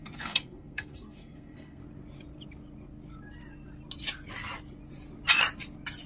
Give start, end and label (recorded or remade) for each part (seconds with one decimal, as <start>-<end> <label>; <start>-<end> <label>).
0.0-1.8 remade; 1.8-6.1 recorded